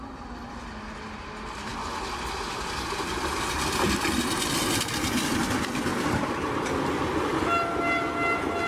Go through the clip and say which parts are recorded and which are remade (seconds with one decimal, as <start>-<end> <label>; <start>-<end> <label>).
0.0-5.9 recorded; 5.9-6.5 remade; 6.5-8.7 recorded

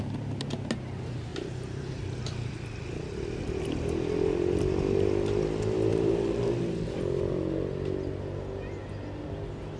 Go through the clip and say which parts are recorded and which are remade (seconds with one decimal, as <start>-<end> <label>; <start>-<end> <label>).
0.0-1.3 recorded; 1.3-2.0 remade; 2.0-5.9 recorded; 5.9-6.5 remade; 6.5-9.8 recorded

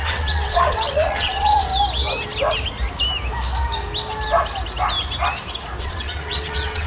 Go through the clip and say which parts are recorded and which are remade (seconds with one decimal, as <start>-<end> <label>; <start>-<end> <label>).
0.0-1.7 remade; 1.7-5.8 recorded; 5.8-6.9 remade

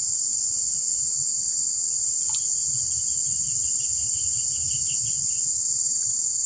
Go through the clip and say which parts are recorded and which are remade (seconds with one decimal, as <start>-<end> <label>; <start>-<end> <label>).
0.0-6.5 recorded

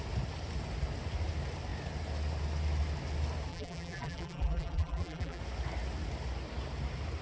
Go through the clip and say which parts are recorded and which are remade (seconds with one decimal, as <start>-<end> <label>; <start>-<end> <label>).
0.0-3.5 recorded; 3.5-5.4 remade; 5.4-7.2 recorded

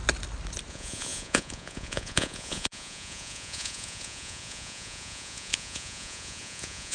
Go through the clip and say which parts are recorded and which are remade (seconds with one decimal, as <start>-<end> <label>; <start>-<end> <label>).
0.0-0.7 recorded; 0.7-6.9 remade

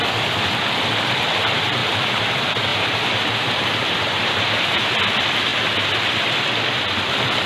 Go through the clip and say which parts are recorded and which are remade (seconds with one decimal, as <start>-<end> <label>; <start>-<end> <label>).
0.0-1.8 recorded; 1.8-2.3 remade; 2.3-2.7 recorded; 2.7-4.9 remade; 4.9-7.5 recorded